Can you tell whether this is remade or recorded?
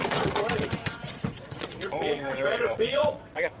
remade